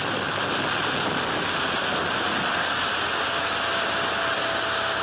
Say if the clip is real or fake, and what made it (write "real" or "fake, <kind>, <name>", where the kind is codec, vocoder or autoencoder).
real